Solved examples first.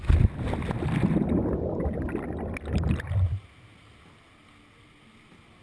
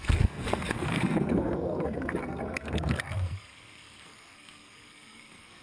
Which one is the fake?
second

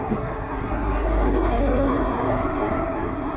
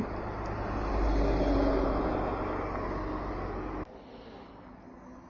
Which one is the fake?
first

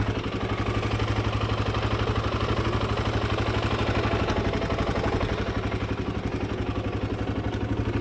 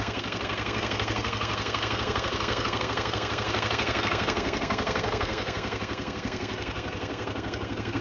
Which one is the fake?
second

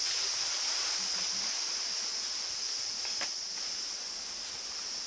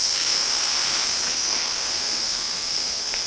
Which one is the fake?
second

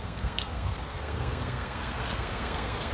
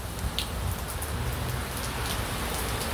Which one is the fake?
first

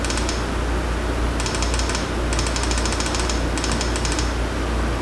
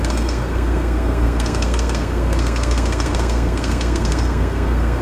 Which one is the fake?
second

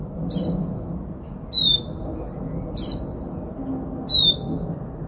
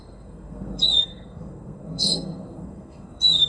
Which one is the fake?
second